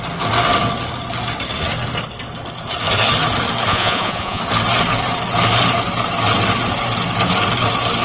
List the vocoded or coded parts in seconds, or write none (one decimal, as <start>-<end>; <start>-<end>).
3.7-4.4